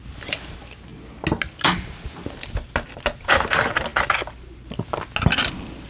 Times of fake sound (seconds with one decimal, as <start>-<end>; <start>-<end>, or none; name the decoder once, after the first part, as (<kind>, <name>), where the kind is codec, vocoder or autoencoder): none